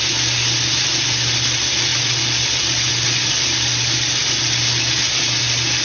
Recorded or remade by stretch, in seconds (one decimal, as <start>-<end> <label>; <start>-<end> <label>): 0.0-5.8 recorded